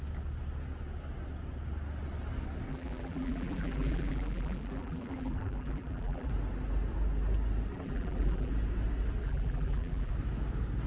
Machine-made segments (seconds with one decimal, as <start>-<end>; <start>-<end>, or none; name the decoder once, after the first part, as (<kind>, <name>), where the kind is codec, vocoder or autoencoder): 2.7-6.3 (vocoder, BigVGAN v2); 7.7-8.5; 9.2-10.1